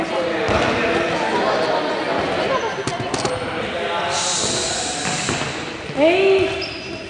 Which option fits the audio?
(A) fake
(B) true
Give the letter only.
B